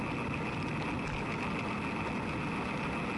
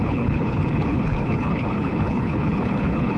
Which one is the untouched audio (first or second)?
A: first